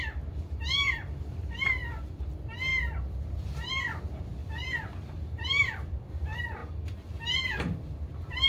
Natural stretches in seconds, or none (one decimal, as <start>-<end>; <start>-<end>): none